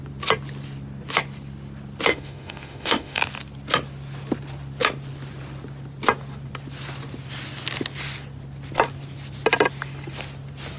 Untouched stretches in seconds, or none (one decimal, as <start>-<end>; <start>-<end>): 0.0-2.1; 3.2-10.8